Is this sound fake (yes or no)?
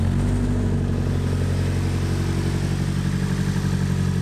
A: no